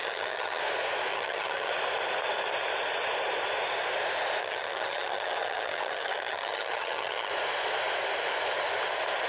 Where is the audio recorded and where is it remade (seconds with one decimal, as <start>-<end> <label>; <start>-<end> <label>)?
0.0-0.6 remade; 0.6-1.1 recorded; 1.1-1.7 remade; 1.7-4.4 recorded; 4.4-7.3 remade; 7.3-9.3 recorded